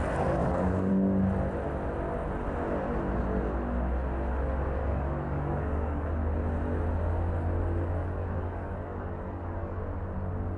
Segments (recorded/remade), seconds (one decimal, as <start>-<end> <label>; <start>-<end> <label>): 0.0-0.4 recorded; 0.4-0.9 remade; 0.9-4.8 recorded; 4.8-6.1 remade; 6.1-8.0 recorded; 8.0-9.8 remade; 9.8-10.6 recorded